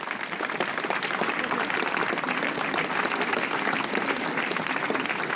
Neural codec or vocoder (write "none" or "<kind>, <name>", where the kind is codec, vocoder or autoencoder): vocoder, BigVGAN v2